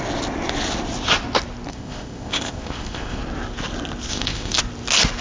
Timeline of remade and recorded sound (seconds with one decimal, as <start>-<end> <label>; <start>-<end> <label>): 0.0-1.7 recorded; 1.7-3.2 remade; 3.2-4.1 recorded; 4.1-4.6 remade; 4.6-5.2 recorded

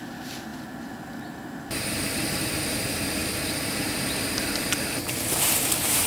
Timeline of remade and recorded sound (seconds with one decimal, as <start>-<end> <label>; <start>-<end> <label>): 0.0-3.2 remade; 3.2-4.9 recorded; 4.9-6.1 remade

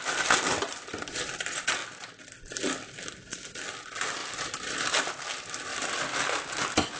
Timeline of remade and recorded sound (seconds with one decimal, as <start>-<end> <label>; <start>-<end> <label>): 0.0-1.8 recorded; 1.8-2.6 remade; 2.6-4.2 recorded; 4.2-5.0 remade; 5.0-7.0 recorded

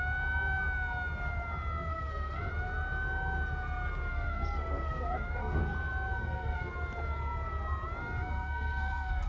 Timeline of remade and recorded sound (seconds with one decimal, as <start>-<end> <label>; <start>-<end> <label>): 0.0-1.9 recorded; 1.9-2.5 remade; 2.5-4.1 recorded; 4.1-5.6 remade; 5.6-6.2 recorded; 6.2-6.7 remade; 6.7-8.0 recorded; 8.0-9.3 remade

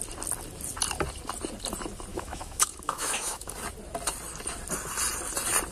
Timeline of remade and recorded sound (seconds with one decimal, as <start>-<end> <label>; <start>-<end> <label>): 0.0-2.1 recorded; 2.1-3.5 remade; 3.5-5.7 recorded

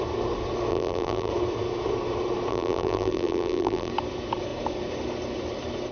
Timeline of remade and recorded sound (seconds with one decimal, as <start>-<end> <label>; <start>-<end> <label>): 0.0-0.7 recorded; 0.7-1.3 remade; 1.3-2.5 recorded; 2.5-3.9 remade; 3.9-5.9 recorded

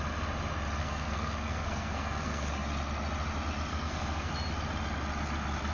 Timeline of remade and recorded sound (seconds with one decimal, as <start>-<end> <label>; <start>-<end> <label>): 0.0-0.8 recorded; 0.8-2.5 remade; 2.5-3.7 recorded; 3.7-4.3 remade; 4.3-5.7 recorded